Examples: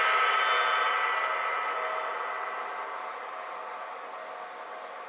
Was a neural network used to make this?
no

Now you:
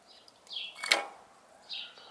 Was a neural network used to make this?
no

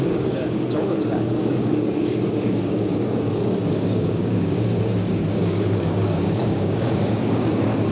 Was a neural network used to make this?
yes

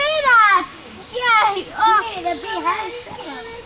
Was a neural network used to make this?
yes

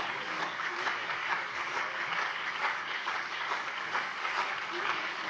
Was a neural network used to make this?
yes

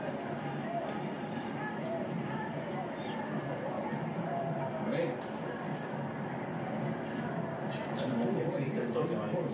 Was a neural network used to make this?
no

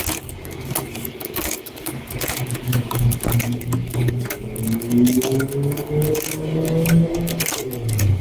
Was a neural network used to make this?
yes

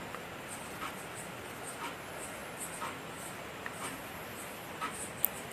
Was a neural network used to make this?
no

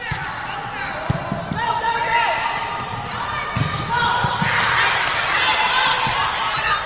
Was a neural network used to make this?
no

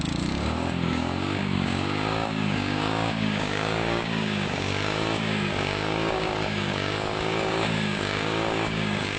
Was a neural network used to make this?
yes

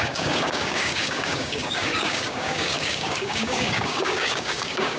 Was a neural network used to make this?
yes